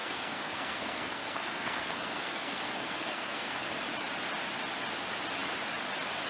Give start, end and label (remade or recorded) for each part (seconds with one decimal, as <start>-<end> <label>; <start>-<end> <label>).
0.0-3.8 remade; 3.8-6.3 recorded